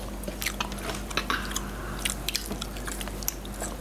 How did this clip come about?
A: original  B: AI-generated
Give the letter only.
A